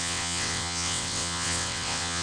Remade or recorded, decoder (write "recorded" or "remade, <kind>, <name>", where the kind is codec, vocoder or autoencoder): remade, vocoder, WaveNeXt